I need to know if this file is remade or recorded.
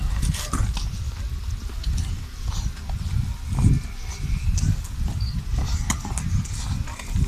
recorded